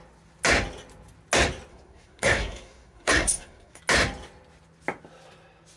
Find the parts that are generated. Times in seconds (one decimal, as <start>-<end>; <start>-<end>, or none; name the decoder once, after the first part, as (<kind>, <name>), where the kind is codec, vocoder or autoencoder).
1.7-3.8 (codec, SNAC)